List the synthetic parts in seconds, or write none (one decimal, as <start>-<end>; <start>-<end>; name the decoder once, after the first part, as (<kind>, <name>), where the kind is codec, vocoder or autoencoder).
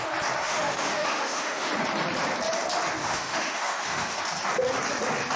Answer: 0.4-1.7 (autoencoder, DAC-VAE); 3.0-4.2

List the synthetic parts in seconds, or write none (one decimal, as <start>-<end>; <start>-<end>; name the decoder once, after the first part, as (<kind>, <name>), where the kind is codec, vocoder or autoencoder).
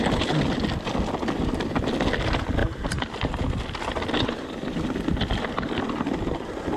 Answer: none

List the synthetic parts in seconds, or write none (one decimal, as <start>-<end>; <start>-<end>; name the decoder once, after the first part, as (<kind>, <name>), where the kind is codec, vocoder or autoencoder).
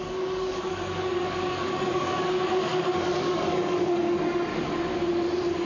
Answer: 0.0-4.5 (codec, DAC)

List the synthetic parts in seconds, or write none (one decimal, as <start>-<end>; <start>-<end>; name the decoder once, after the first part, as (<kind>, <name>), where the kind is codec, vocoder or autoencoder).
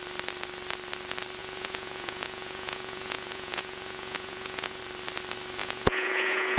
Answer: 1.4-4.8 (vocoder, Vocos); 5.6-6.6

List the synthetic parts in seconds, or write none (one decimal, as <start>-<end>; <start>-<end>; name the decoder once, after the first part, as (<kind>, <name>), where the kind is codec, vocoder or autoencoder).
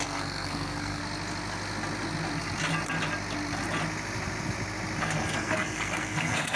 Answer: 0.0-1.0 (codec, SNAC); 5.0-6.6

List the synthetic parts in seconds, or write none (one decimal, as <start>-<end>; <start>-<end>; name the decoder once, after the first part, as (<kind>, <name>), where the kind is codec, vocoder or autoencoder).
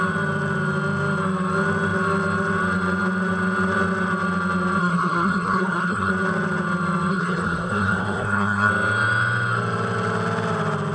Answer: 4.8-6.1 (codec, SNAC); 7.1-8.7